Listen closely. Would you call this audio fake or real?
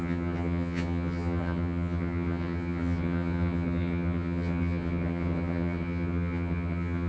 fake